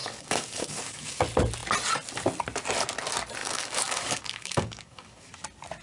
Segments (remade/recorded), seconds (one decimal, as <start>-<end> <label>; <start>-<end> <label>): 0.0-1.2 remade; 1.2-3.4 recorded; 3.4-5.3 remade; 5.3-5.8 recorded